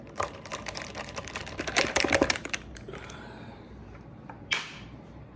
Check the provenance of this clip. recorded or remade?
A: remade